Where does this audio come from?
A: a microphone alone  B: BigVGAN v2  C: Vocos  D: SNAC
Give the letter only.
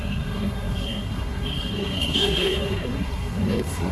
D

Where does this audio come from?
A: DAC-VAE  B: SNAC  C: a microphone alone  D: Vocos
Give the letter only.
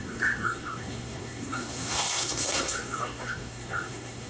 B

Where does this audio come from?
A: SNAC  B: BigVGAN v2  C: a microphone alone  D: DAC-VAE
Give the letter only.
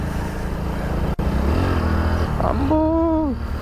C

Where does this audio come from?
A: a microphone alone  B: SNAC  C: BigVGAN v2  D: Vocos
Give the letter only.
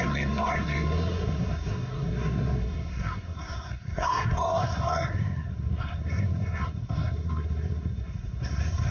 B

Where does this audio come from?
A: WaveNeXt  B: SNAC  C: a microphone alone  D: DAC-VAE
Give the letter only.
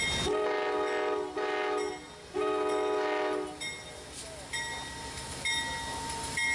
C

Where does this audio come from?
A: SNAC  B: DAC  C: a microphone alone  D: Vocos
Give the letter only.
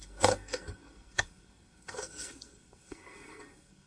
A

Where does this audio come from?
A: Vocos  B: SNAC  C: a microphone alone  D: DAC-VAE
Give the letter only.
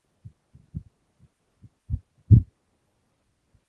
C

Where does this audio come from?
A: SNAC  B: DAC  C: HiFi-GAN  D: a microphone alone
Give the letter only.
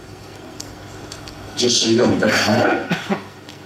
A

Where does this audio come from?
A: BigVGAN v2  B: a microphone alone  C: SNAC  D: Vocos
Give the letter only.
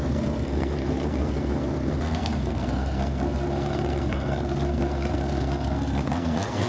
C